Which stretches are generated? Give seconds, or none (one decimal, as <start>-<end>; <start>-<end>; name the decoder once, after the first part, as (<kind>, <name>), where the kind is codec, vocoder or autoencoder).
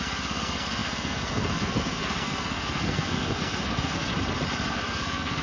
0.0-4.1 (codec, SNAC); 4.7-5.4